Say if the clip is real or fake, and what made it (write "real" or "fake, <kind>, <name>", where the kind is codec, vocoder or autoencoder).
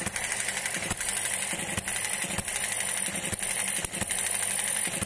real